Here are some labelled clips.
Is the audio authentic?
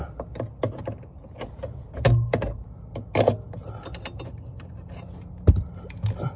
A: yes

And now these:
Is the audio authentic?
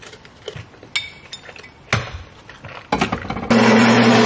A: yes